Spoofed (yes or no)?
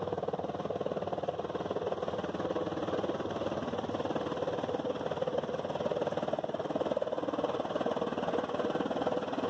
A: no